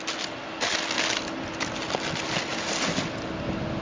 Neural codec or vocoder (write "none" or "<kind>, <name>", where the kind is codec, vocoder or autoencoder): none